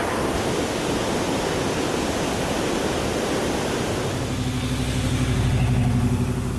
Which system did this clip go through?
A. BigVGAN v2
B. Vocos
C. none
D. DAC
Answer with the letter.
C